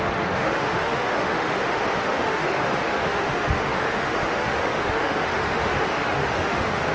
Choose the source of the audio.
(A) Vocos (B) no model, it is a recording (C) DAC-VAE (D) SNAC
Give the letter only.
C